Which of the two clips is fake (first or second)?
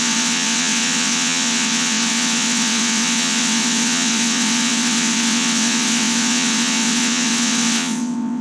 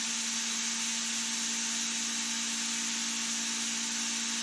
first